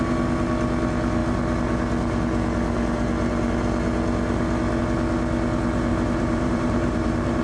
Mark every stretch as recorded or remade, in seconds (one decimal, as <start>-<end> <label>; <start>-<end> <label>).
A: 0.0-5.9 recorded; 5.9-7.4 remade